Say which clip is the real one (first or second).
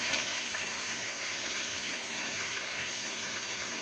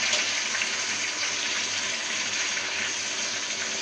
second